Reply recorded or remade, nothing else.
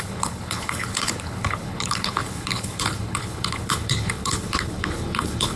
remade